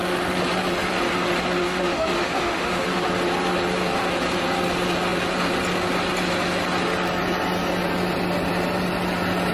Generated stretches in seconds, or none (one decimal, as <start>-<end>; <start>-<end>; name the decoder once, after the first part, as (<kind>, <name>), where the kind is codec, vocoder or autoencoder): 1.6-3.1 (autoencoder, DAC-VAE)